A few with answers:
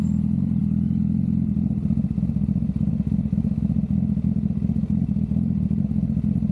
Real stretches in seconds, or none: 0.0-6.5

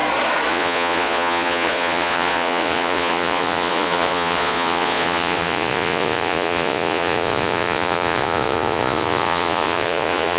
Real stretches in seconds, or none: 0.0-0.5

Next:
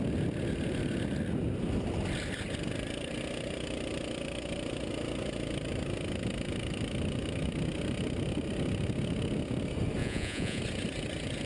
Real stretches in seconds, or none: 0.0-10.0; 10.6-11.5